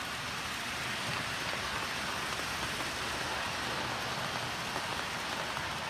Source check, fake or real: real